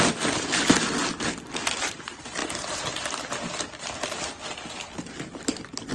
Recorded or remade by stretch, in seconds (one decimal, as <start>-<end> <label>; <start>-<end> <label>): 0.0-5.9 recorded